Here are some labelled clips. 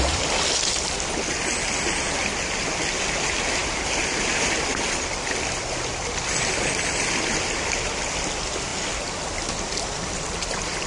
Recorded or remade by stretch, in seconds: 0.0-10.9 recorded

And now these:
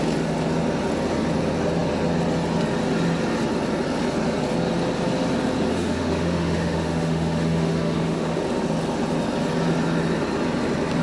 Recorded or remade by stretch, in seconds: 0.0-5.7 recorded; 5.7-8.4 remade; 8.4-11.0 recorded

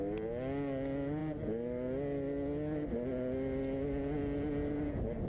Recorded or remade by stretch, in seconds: 0.0-5.3 recorded

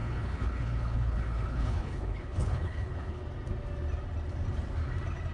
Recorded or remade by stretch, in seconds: 0.0-3.2 remade; 3.2-5.3 recorded

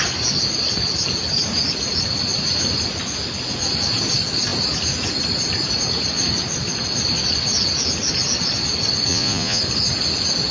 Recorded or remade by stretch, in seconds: 0.0-9.1 recorded; 9.1-9.6 remade; 9.6-10.5 recorded

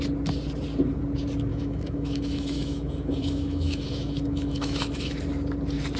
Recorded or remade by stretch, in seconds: 0.0-1.5 recorded; 1.5-5.1 remade; 5.1-6.0 recorded

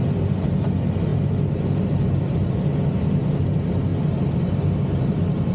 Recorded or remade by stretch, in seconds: 0.0-1.1 recorded; 1.1-2.5 remade; 2.5-3.9 recorded; 3.9-4.5 remade; 4.5-5.5 recorded